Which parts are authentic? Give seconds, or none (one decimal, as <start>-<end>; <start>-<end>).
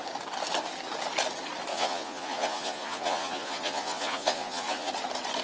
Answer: 0.0-1.7; 4.9-5.4